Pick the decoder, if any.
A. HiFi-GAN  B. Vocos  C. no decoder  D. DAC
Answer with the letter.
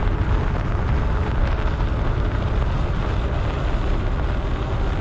C